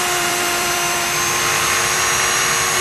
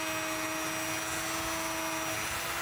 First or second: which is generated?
first